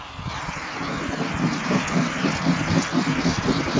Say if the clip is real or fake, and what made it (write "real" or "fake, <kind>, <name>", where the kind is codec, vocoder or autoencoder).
real